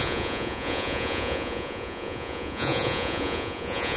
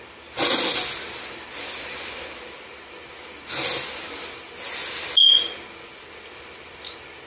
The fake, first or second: first